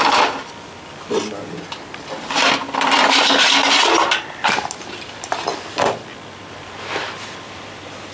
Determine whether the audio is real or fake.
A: fake